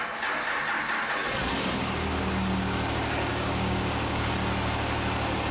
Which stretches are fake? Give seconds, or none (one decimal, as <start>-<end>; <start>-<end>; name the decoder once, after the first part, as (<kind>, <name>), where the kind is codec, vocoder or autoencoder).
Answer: 3.3-4.3 (codec, DAC)